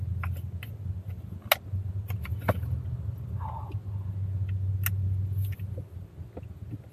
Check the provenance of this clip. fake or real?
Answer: real